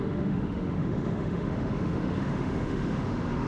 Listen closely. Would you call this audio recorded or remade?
remade